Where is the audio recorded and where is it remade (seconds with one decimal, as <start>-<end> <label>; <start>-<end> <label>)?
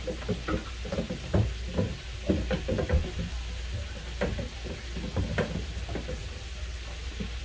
0.0-7.4 recorded